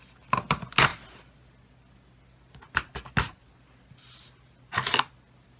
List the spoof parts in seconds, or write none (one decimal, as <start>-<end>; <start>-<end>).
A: none